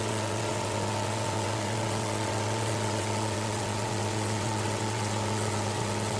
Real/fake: fake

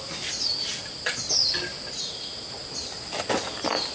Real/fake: real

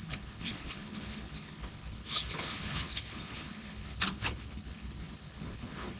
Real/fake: fake